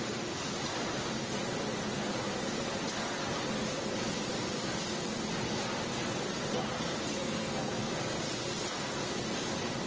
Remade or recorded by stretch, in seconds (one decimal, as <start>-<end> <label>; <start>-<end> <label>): 0.0-7.2 recorded; 7.2-7.8 remade; 7.8-9.9 recorded